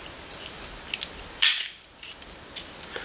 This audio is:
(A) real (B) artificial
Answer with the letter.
A